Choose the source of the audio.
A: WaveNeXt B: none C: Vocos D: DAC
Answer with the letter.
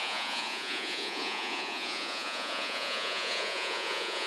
C